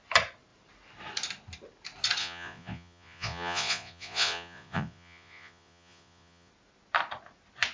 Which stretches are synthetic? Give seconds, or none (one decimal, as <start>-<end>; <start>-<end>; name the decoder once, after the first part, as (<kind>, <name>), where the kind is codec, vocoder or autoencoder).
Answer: 2.2-6.5 (vocoder, Vocos)

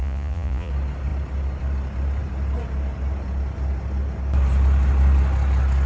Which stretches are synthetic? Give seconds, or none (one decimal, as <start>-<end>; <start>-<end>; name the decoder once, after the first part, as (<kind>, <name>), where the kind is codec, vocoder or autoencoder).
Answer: 0.0-0.7 (vocoder, Vocos)

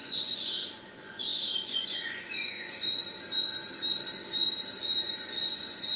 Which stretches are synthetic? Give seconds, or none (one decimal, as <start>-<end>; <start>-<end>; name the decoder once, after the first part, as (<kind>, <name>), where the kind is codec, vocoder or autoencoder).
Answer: 0.0-3.0 (vocoder, Vocos); 4.8-6.0

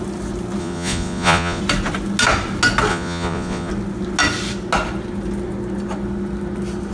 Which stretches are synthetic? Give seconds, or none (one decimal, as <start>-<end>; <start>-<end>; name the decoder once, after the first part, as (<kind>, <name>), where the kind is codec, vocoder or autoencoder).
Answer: 0.6-1.6 (vocoder, Vocos); 2.9-3.7